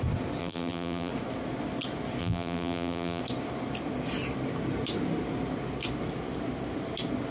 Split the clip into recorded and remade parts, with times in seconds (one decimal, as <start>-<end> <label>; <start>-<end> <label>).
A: 0.0-0.4 recorded; 0.4-1.1 remade; 1.1-2.2 recorded; 2.2-3.2 remade; 3.2-7.3 recorded